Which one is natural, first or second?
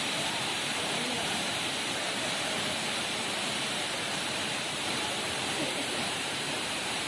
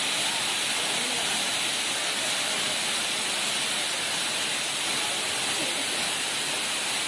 second